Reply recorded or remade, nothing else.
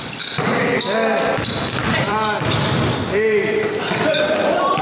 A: remade